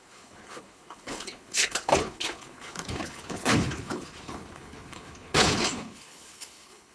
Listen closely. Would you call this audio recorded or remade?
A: remade